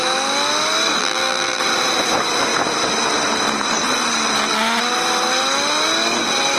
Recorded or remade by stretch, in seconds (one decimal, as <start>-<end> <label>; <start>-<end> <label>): 0.0-1.0 recorded; 1.0-1.6 remade; 1.6-6.6 recorded